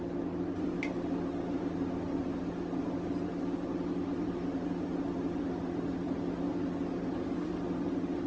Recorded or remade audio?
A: recorded